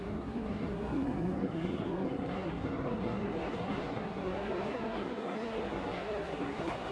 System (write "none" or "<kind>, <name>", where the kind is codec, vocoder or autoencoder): codec, SNAC